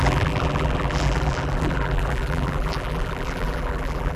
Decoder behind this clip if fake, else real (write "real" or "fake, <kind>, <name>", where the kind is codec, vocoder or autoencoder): fake, vocoder, BigVGAN v2